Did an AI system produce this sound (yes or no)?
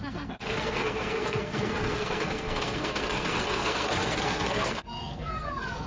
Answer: yes